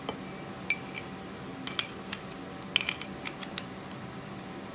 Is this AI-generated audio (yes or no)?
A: no